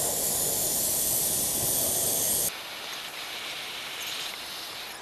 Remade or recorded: recorded